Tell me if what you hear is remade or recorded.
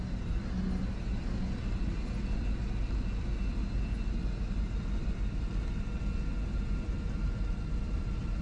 recorded